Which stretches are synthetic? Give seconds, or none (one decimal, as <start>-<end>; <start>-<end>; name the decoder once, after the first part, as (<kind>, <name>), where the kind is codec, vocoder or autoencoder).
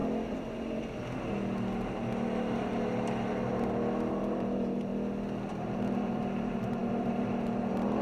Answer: 4.1-4.9 (vocoder, BigVGAN v2); 5.5-8.0